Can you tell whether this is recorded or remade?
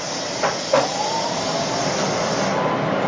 recorded